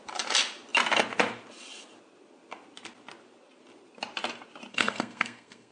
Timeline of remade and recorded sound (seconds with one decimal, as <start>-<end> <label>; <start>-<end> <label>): 0.0-4.7 recorded; 4.7-5.7 remade